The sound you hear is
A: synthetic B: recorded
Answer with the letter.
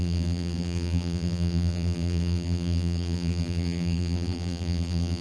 A